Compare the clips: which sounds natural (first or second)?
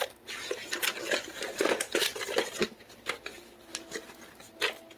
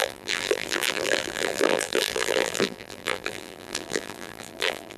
first